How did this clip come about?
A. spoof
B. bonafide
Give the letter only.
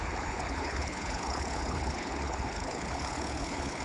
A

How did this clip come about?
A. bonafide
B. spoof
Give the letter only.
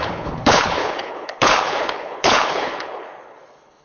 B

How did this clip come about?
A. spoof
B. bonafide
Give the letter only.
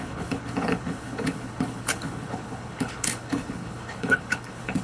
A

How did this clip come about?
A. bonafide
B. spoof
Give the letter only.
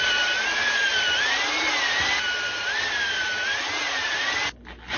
A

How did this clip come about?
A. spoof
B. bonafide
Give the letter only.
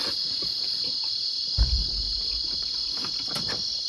B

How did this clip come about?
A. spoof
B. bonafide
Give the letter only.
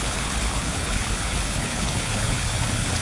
A